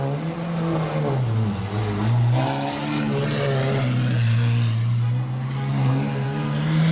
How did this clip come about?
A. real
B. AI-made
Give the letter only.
A